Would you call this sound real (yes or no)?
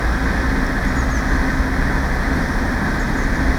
yes